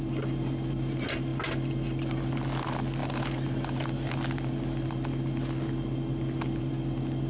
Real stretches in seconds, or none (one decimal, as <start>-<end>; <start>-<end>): 0.0-7.3